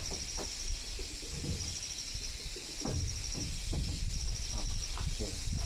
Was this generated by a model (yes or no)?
no